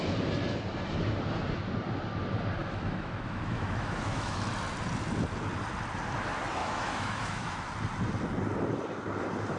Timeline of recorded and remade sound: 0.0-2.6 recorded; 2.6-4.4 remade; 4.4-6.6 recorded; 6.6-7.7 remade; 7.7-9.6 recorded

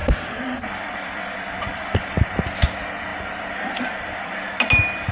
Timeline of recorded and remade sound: 0.0-2.0 remade; 2.0-3.1 recorded; 3.1-4.3 remade; 4.3-5.1 recorded

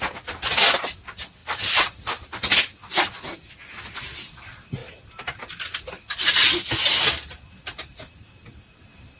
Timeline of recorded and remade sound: 0.0-9.2 recorded